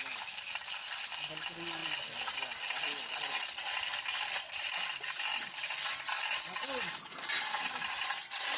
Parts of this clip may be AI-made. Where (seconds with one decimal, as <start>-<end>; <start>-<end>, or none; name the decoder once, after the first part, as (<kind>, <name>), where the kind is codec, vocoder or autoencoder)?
none